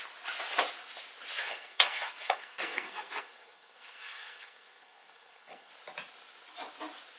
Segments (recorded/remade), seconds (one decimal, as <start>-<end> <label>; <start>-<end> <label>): 0.0-1.4 recorded; 1.4-5.7 remade; 5.7-7.2 recorded